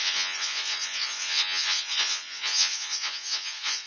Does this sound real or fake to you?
fake